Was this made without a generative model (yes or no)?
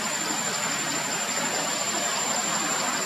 yes